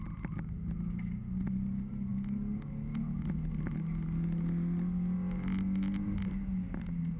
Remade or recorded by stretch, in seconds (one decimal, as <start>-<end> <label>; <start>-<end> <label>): 0.0-7.2 recorded